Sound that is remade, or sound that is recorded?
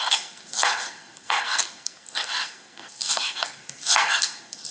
remade